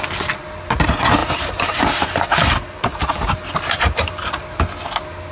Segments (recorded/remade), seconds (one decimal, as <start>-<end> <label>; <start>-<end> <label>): 0.0-1.2 recorded; 1.2-4.4 remade; 4.4-5.3 recorded